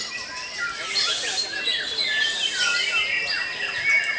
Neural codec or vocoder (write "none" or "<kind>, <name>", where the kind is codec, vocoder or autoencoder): none